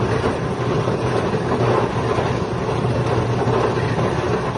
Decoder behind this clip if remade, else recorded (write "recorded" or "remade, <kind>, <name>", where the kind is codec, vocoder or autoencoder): recorded